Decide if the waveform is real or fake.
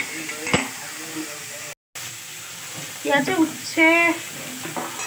real